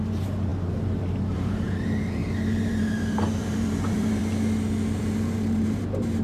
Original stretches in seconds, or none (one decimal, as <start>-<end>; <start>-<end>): 4.2-5.0